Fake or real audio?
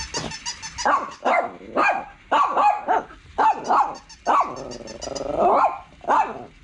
real